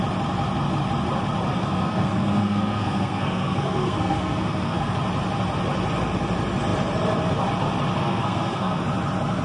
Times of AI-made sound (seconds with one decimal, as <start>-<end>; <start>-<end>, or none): 1.5-4.9; 8.0-8.8